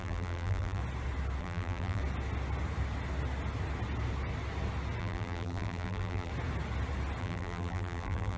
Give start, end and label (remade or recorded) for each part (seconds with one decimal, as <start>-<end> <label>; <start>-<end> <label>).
0.0-0.8 remade; 0.8-1.4 recorded; 1.4-2.0 remade; 2.0-5.0 recorded; 5.0-6.3 remade; 6.3-7.2 recorded; 7.2-8.4 remade